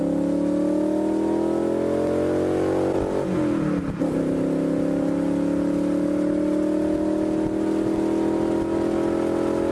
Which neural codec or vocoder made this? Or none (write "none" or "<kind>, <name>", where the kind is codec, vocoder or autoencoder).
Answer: none